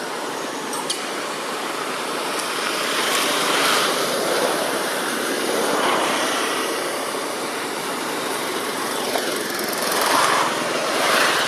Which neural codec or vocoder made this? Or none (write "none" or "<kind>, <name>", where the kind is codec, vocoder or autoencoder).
vocoder, BigVGAN v2